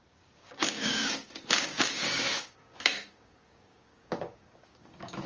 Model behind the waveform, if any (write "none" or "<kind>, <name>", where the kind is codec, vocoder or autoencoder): codec, DAC